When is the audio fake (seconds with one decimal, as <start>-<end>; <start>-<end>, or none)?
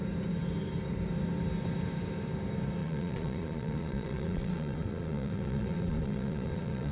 2.8-6.9